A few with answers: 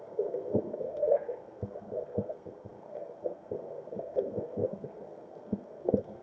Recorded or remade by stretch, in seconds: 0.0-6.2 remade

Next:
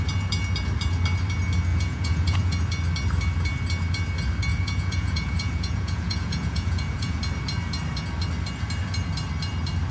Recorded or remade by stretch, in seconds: 0.0-1.7 recorded; 1.7-2.6 remade; 2.6-4.5 recorded; 4.5-7.2 remade; 7.2-9.9 recorded

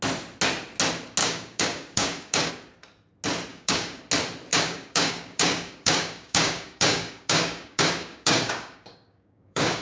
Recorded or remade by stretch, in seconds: 0.0-1.2 recorded; 1.2-2.5 remade; 2.5-3.5 recorded; 3.5-4.0 remade; 4.0-4.5 recorded; 4.5-9.8 remade

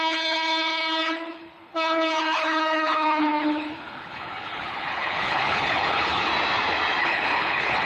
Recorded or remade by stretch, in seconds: 0.0-6.3 remade; 6.3-7.0 recorded; 7.0-7.9 remade

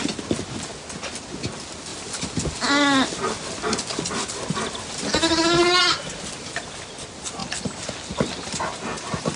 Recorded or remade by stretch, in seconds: 0.0-9.4 recorded